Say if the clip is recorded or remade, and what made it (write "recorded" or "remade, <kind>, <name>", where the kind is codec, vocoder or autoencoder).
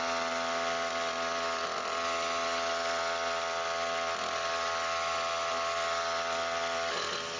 recorded